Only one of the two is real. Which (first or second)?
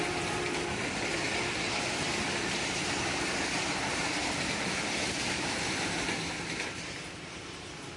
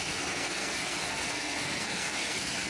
first